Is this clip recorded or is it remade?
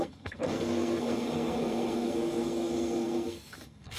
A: remade